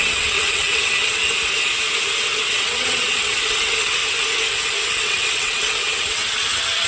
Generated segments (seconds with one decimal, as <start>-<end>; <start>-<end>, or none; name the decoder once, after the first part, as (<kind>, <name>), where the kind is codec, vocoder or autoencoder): 0.0-1.2 (vocoder, WaveNeXt); 2.2-4.0; 4.8-6.9